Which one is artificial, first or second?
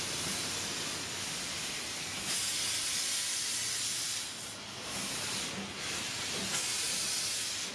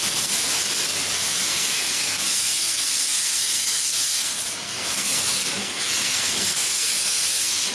second